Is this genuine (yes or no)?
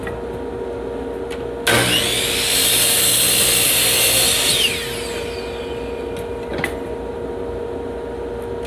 yes